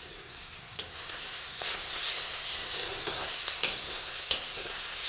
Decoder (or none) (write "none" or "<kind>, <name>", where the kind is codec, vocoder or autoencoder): codec, SNAC